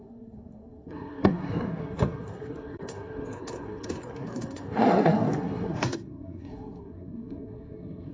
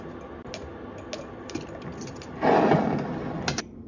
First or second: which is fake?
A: first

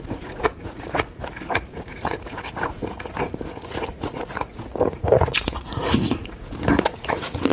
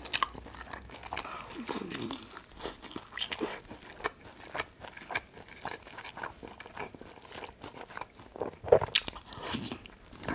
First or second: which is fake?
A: first